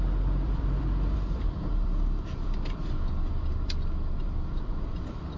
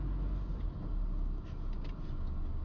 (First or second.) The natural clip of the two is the second